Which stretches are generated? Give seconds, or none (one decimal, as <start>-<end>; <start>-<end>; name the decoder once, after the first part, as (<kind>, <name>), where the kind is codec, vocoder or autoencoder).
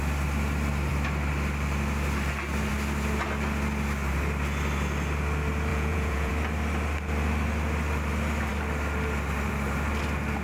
5.7-6.3 (vocoder, Vocos)